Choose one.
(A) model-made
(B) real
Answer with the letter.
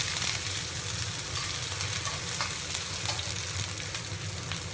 B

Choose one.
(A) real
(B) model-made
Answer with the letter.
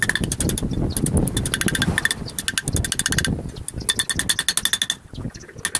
A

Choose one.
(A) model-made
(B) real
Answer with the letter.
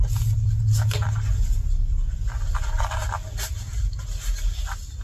B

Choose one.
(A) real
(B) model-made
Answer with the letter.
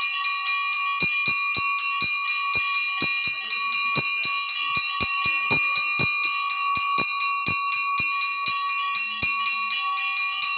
A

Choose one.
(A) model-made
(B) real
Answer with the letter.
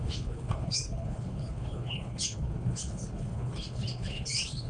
A